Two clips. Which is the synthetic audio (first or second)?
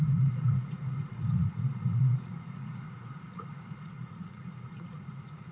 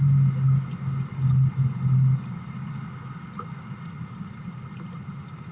first